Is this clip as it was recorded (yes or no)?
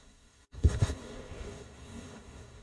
no